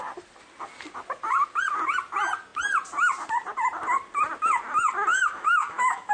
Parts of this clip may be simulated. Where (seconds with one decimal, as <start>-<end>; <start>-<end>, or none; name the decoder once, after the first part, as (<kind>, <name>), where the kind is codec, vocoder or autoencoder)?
5.1-6.1 (autoencoder, DAC-VAE)

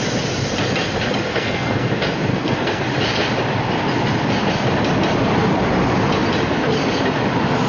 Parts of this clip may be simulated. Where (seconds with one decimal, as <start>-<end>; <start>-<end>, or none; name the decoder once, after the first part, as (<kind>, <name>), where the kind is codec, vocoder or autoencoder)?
1.3-1.9 (codec, SNAC); 2.3-2.8

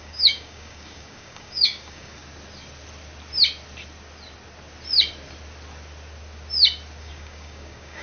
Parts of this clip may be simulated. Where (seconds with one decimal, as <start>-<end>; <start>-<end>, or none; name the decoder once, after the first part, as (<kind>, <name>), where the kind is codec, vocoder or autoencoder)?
0.0-2.2 (codec, DAC); 7.0-8.0

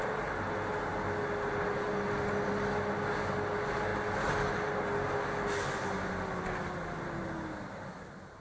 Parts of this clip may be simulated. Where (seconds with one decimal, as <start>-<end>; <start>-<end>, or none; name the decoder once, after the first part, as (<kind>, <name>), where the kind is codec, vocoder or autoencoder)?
none

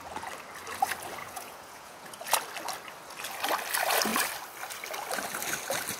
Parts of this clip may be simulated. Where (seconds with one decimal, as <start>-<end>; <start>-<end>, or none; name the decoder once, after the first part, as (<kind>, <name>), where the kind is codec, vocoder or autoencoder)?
1.2-2.2 (vocoder, Vocos)

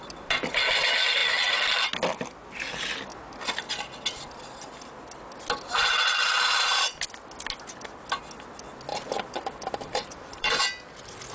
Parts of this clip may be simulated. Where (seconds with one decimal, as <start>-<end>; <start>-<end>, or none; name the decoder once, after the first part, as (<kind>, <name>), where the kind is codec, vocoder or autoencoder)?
3.1-3.7 (vocoder, BigVGAN v2); 6.2-7.0; 8.9-10.6

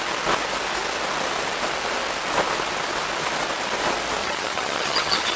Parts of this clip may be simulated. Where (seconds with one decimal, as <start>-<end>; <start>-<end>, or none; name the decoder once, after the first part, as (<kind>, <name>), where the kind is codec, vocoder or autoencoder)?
4.2-5.4 (vocoder, HiFi-GAN)

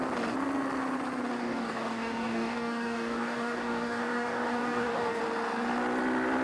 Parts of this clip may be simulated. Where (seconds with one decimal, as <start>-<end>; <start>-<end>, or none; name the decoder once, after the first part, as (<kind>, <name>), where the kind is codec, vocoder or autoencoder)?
1.4-5.2 (codec, DAC)